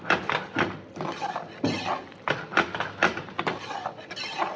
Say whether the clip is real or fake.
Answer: real